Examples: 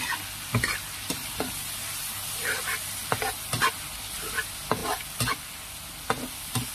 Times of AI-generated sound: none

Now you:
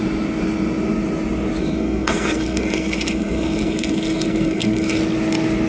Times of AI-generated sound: 1.6-5.0 (codec, SNAC)

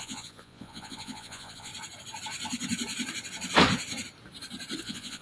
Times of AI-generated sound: 0.0-1.7 (vocoder, Vocos); 4.8-5.2

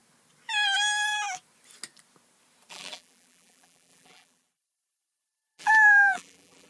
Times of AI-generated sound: 2.7-6.7 (vocoder, BigVGAN v2)

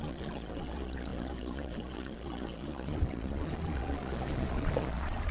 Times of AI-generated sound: 0.0-5.3 (vocoder, Vocos)

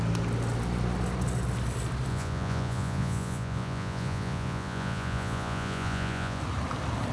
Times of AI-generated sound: 2.1-6.4 (vocoder, Vocos)

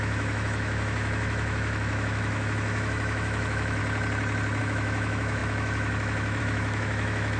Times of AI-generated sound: 0.0-3.8 (autoencoder, DAC-VAE); 4.6-7.4